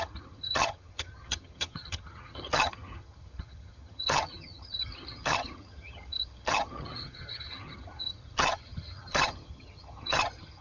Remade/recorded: remade